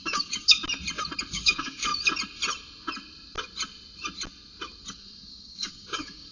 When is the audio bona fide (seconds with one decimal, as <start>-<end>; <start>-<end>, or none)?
0.6-1.3; 1.9-4.9